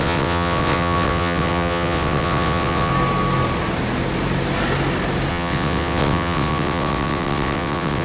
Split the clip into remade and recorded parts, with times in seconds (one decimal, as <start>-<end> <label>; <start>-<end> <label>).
0.0-2.9 remade; 2.9-5.3 recorded; 5.3-8.0 remade